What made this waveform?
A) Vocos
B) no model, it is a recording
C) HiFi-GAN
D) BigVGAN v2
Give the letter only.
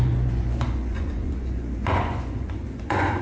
A